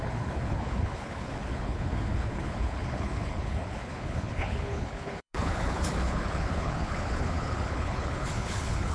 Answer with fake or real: fake